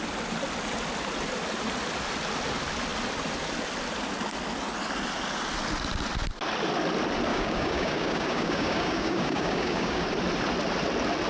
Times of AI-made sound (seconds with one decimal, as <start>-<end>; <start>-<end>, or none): 7.3-10.1